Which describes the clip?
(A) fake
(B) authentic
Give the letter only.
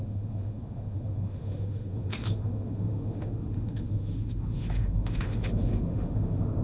A